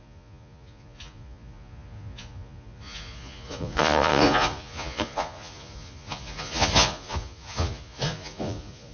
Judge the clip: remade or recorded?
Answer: remade